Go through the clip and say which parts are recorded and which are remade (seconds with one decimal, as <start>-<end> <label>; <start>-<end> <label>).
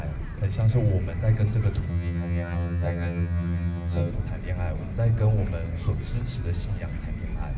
0.0-1.9 recorded; 1.9-4.1 remade; 4.1-7.6 recorded